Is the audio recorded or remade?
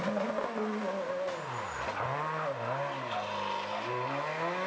recorded